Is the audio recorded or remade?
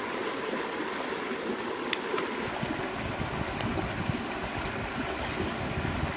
recorded